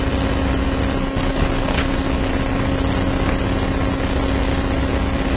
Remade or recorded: recorded